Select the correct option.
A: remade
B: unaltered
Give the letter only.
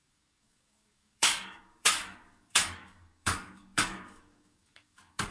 A